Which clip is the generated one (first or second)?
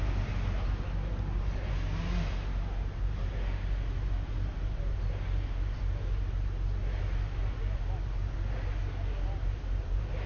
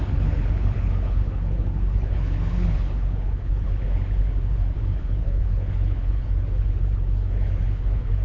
second